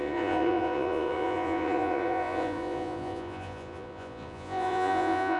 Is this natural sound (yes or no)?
no